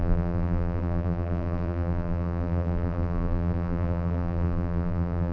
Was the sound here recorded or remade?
remade